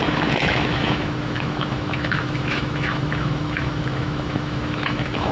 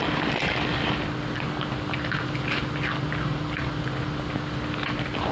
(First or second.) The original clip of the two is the second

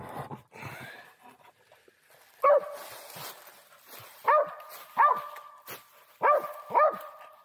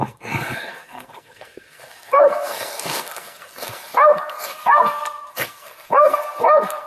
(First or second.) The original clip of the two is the first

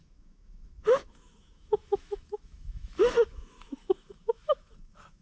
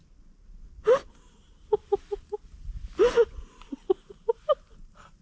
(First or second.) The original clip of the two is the second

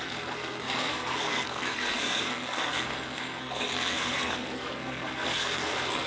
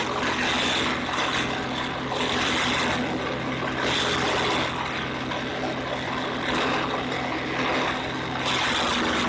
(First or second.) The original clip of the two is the second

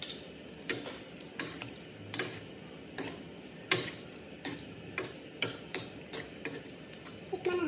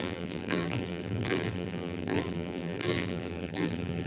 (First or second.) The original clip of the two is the first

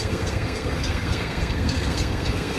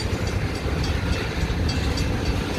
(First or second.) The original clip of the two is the second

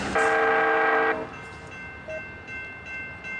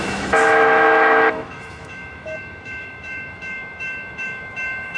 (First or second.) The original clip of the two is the first